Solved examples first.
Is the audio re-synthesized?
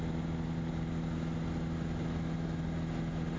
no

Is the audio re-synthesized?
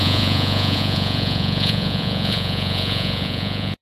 yes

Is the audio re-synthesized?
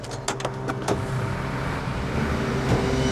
no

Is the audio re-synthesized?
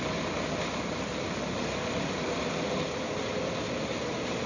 no